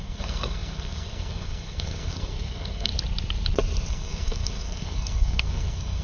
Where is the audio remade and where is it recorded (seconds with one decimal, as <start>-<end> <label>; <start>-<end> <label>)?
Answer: 0.0-2.9 remade; 2.9-3.9 recorded; 3.9-6.0 remade